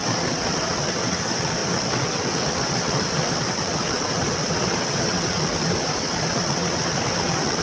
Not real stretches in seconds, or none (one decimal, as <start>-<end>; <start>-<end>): 0.0-7.6